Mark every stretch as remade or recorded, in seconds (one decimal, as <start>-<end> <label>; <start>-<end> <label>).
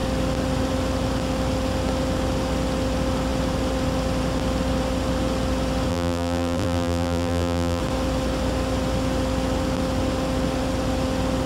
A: 0.0-5.9 recorded; 5.9-7.8 remade; 7.8-11.5 recorded